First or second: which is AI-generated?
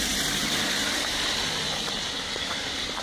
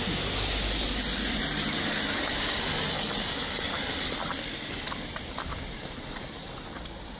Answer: first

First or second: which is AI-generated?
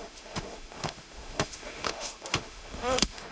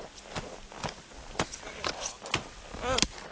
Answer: first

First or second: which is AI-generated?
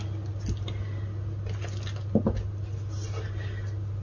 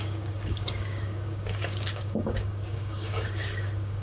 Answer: second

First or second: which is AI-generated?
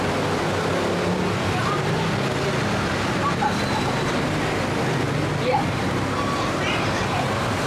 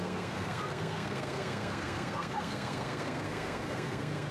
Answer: second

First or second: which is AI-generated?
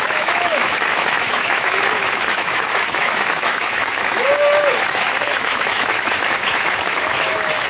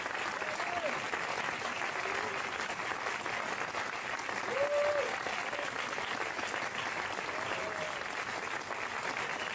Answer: first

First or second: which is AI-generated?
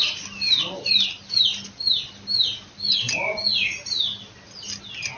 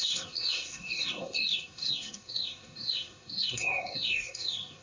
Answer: second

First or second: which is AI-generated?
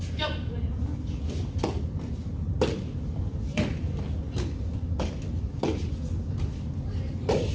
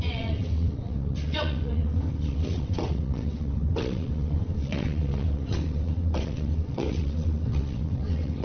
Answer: second